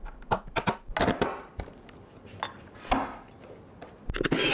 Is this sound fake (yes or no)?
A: no